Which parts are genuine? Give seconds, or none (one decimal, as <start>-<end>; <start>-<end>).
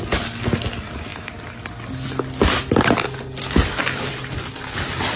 0.0-5.2